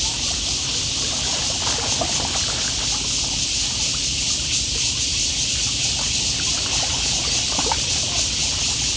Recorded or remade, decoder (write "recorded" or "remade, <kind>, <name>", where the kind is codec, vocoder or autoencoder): recorded